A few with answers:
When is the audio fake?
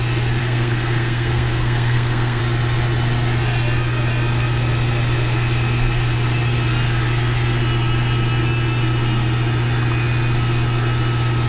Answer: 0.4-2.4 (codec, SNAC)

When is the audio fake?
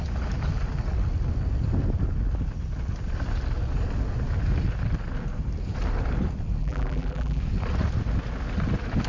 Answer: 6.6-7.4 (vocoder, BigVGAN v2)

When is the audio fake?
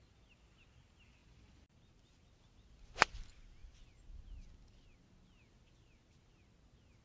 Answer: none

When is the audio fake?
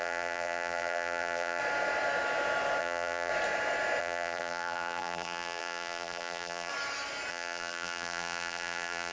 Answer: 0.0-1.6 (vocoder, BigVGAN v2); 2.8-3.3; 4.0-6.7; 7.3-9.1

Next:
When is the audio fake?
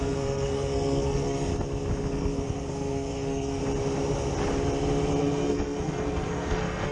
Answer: 0.0-1.5 (codec, SNAC); 2.1-3.6; 5.2-6.9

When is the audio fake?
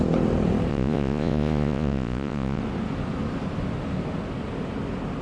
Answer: 0.7-2.6 (vocoder, Vocos)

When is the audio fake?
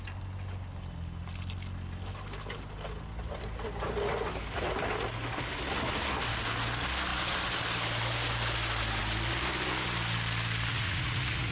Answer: 10.7-11.5 (vocoder, Vocos)